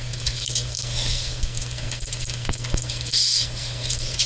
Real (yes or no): no